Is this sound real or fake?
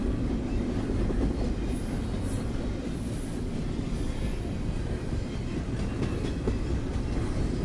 real